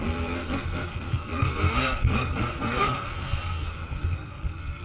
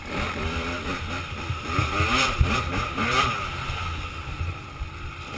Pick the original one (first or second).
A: second